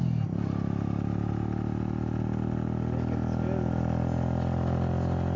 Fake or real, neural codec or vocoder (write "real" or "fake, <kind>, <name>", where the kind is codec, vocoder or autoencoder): real